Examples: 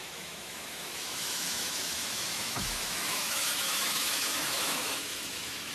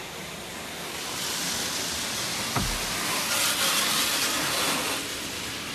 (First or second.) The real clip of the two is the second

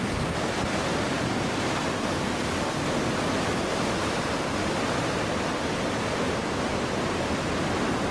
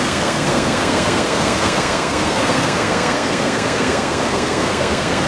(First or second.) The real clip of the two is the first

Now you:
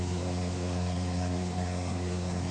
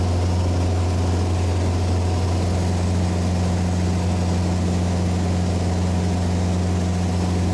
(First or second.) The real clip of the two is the second